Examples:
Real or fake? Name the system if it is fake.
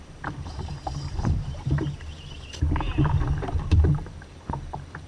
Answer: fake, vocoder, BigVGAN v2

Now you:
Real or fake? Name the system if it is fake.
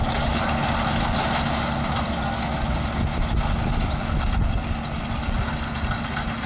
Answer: real